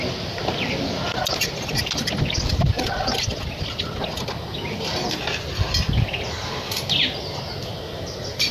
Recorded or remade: recorded